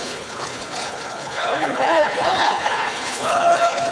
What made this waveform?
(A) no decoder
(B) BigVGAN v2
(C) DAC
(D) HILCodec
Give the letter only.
D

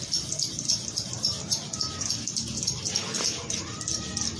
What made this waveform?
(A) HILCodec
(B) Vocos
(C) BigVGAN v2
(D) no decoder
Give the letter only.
D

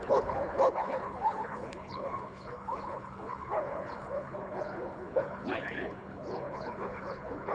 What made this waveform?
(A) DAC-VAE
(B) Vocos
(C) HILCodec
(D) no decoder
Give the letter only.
C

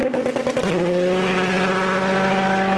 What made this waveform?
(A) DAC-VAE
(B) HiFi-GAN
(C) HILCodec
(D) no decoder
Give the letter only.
D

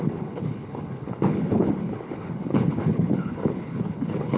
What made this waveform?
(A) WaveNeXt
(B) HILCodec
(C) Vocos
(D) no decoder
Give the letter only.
B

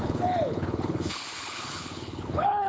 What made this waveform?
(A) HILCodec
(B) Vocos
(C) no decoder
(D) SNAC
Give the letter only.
A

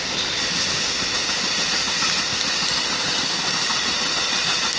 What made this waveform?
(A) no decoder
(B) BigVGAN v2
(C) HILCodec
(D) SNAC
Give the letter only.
A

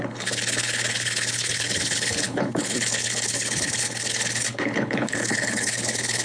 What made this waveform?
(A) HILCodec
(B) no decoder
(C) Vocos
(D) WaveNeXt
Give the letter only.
A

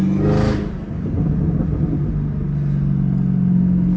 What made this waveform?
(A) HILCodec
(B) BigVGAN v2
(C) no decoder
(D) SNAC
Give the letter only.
C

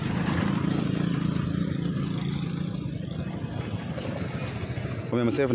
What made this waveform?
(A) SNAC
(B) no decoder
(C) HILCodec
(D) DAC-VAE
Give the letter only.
B